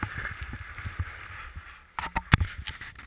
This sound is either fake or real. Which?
real